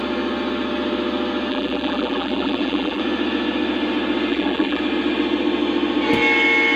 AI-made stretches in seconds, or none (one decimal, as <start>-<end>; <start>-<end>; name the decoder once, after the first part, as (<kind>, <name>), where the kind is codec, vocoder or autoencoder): 1.5-3.0 (vocoder, BigVGAN v2); 4.3-4.8